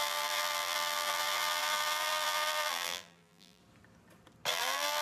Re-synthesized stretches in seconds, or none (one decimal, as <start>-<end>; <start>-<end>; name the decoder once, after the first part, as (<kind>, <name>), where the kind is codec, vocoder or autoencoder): 0.0-3.6 (vocoder, BigVGAN v2); 4.5-5.0